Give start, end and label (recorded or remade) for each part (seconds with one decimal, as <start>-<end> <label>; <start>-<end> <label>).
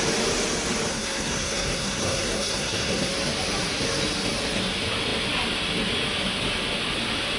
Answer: 0.0-0.9 recorded; 0.9-3.1 remade; 3.1-7.4 recorded